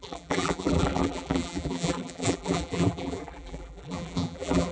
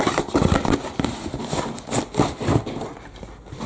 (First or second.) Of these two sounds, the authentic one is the second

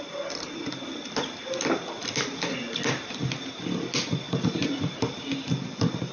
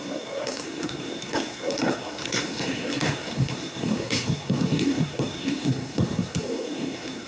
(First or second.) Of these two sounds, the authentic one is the first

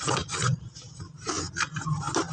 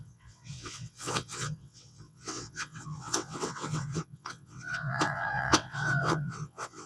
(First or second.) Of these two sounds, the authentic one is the first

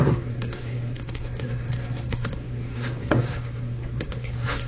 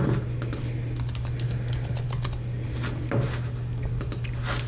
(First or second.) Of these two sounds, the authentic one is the second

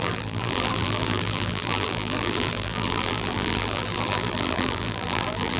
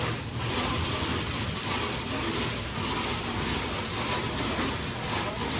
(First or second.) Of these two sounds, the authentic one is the second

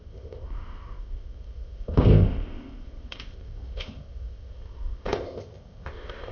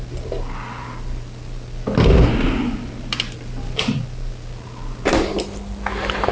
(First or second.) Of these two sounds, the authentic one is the second